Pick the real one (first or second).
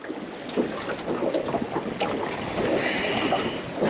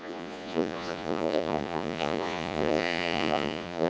first